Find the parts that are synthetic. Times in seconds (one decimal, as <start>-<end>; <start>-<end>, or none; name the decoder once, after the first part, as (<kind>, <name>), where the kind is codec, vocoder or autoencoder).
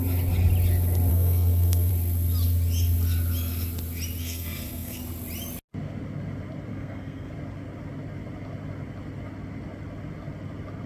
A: 1.1-1.9 (codec, SNAC); 4.2-5.0; 6.7-7.3